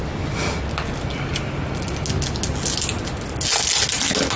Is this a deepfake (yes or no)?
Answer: no